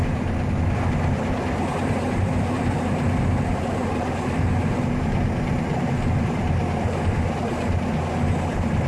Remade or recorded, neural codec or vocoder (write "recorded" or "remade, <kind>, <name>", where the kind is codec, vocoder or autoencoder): recorded